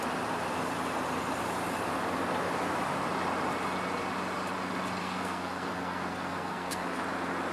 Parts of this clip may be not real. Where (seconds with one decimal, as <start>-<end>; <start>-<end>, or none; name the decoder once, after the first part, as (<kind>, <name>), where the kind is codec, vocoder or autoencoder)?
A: 5.0-7.0 (codec, SNAC)

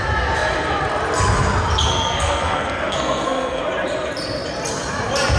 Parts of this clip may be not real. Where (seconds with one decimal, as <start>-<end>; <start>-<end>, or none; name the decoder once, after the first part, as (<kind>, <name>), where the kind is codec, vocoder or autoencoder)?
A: 1.9-3.6 (codec, SNAC)

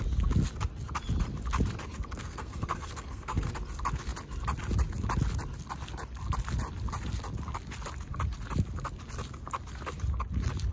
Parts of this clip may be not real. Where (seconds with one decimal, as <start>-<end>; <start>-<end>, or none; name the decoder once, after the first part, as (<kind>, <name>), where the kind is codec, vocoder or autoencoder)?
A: 2.2-3.5 (codec, SNAC)

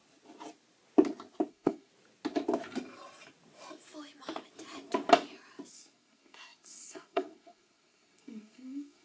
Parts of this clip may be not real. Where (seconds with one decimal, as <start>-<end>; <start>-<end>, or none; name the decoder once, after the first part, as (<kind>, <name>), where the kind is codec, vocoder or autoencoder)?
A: 1.5-1.9 (codec, SNAC); 5.7-9.0

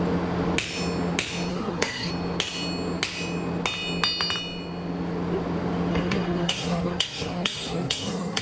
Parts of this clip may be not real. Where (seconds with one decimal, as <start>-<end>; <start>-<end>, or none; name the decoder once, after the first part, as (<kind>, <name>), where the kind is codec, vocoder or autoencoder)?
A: 1.5-2.1 (codec, SNAC); 5.9-8.4

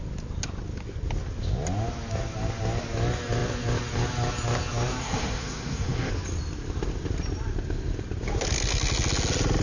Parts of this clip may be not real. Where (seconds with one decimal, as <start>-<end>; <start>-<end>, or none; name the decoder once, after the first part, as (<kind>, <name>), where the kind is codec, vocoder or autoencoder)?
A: 5.0-6.1 (codec, SNAC)

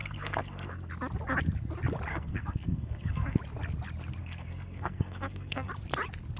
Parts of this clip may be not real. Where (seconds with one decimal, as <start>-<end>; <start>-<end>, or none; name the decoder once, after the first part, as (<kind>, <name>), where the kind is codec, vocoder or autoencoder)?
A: 0.0-0.9 (codec, SNAC); 2.1-3.4; 4.2-5.7